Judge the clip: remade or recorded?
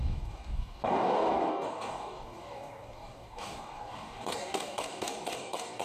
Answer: remade